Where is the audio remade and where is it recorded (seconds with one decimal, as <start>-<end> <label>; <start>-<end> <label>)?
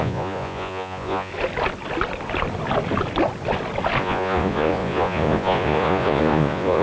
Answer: 0.0-1.3 remade; 1.3-4.0 recorded; 4.0-6.8 remade